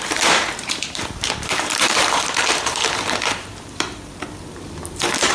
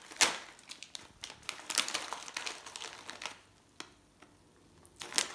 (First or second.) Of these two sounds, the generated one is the first